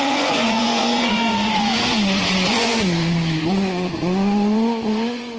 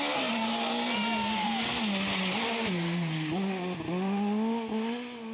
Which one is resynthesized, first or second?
first